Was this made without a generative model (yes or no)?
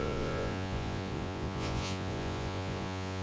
no